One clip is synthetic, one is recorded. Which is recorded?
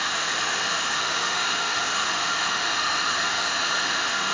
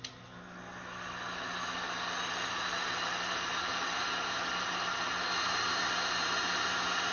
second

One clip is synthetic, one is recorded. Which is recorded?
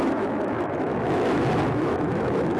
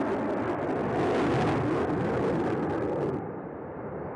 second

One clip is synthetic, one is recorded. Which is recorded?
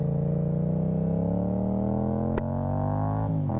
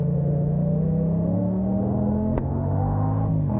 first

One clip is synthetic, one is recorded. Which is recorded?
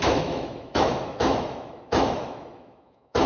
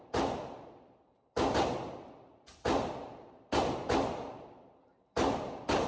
second